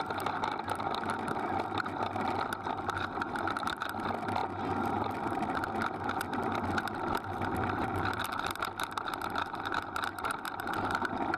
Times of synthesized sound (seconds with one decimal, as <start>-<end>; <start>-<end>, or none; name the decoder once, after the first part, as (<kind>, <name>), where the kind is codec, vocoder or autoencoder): 4.4-8.2 (vocoder, BigVGAN v2)